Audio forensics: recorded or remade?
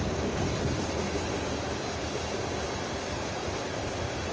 recorded